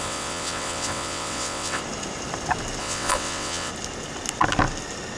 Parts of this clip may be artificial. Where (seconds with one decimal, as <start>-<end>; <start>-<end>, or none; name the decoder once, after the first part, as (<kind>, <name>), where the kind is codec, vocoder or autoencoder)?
0.0-1.8 (vocoder, WaveNeXt); 2.8-3.7